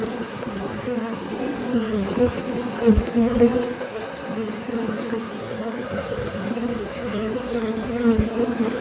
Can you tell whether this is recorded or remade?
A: remade